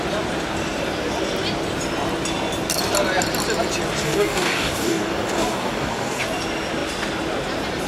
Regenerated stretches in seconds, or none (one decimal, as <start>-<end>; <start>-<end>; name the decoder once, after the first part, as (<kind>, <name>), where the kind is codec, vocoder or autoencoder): 4.0-6.2 (codec, DAC)